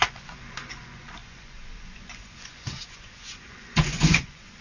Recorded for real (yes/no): no